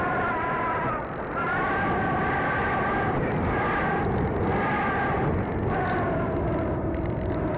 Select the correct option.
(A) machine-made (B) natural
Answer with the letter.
B